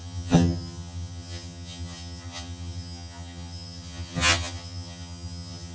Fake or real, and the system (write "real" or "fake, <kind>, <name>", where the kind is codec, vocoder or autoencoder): fake, vocoder, HiFi-GAN